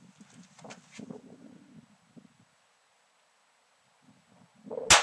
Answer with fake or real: real